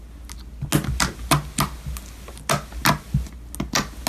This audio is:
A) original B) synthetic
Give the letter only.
A